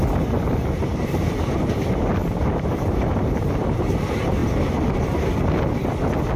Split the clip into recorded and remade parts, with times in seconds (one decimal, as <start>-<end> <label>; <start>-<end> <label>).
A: 0.0-0.9 recorded; 0.9-1.6 remade; 1.6-2.2 recorded; 2.2-3.6 remade; 3.6-6.4 recorded